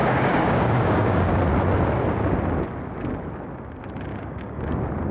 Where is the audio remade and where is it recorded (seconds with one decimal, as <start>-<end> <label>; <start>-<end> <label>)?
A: 0.0-1.3 remade; 1.3-4.1 recorded; 4.1-4.6 remade; 4.6-5.1 recorded